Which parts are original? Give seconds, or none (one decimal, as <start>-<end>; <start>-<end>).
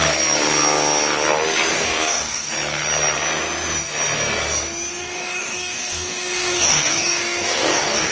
0.0-1.7; 2.5-4.9